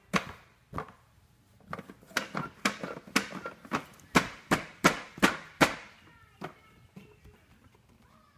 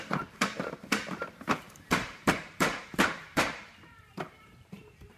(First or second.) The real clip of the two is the first